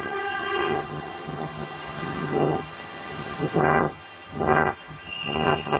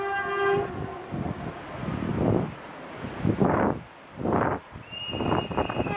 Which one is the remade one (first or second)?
first